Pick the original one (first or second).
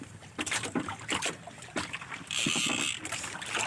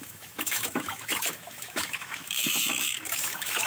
first